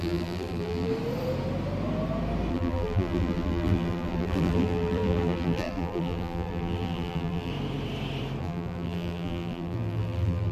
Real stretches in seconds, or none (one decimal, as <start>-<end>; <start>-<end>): 0.9-2.5; 7.5-8.4